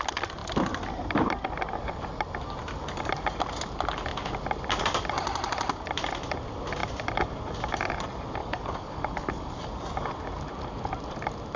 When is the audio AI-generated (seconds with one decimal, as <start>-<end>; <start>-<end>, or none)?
8.4-9.6